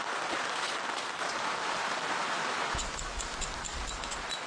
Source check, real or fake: real